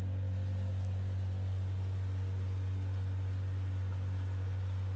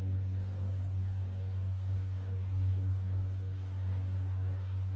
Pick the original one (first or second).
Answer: first